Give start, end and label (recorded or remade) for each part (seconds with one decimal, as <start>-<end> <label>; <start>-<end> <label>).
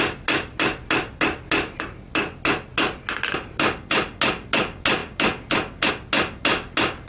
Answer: 0.0-7.1 recorded